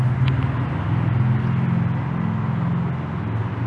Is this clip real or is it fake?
real